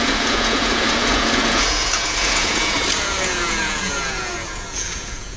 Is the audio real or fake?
fake